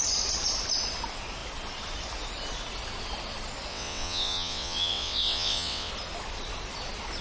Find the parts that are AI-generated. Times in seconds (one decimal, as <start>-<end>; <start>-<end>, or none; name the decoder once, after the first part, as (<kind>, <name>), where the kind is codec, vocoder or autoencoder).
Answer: 3.7-5.9 (vocoder, WaveNeXt)